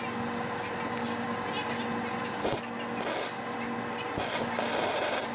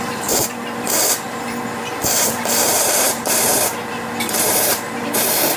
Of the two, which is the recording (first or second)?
first